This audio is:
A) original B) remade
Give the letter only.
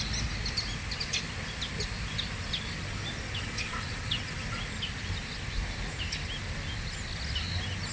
A